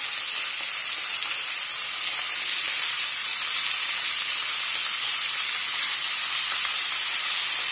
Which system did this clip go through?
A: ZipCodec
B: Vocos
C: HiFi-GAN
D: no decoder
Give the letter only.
D